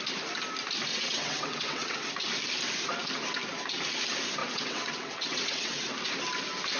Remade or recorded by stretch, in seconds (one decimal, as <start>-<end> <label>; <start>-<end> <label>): 0.0-0.9 recorded; 0.9-2.1 remade; 2.1-4.4 recorded; 4.4-5.9 remade; 5.9-6.8 recorded